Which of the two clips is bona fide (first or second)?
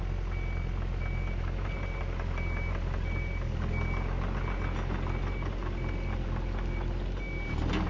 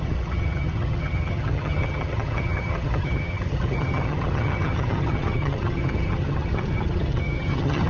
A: first